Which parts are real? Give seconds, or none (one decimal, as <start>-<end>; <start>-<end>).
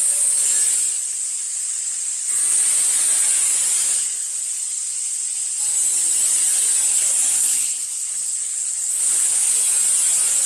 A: 0.0-6.9; 9.5-10.5